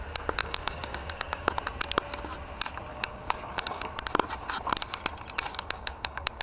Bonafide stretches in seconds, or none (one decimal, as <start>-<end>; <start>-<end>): 0.0-0.4; 1.5-2.9; 3.9-5.5